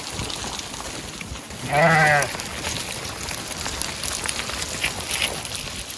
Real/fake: real